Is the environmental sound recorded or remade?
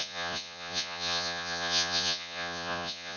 remade